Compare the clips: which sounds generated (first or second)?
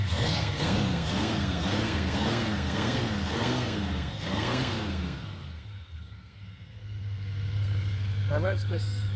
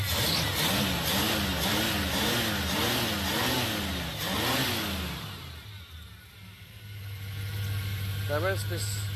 first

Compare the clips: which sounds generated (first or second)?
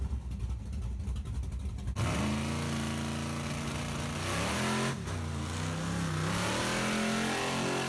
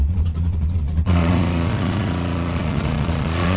second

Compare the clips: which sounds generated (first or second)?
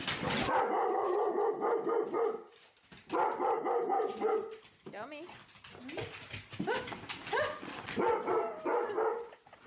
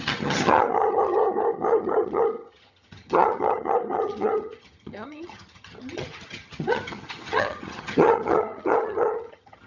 second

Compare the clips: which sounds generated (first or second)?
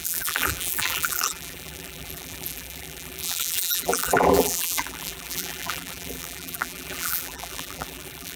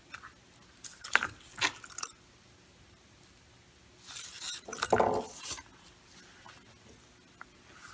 first